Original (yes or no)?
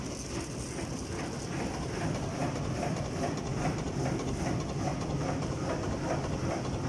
yes